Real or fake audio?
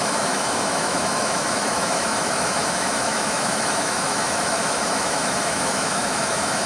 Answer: fake